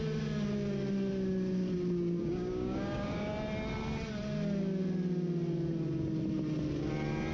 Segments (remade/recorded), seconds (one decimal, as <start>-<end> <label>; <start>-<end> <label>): 0.0-2.2 recorded; 2.2-3.3 remade; 3.3-7.3 recorded